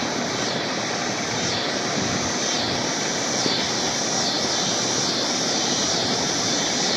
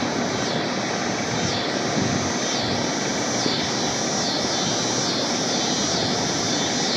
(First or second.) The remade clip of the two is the first